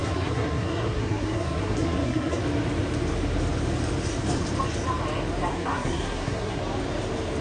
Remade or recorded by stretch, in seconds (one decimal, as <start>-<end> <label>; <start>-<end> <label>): 0.0-2.4 remade; 2.4-5.5 recorded; 5.5-6.6 remade; 6.6-7.4 recorded